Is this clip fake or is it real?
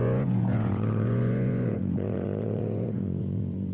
fake